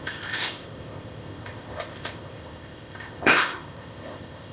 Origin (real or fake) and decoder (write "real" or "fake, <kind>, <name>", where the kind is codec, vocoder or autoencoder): fake, codec, ZipCodec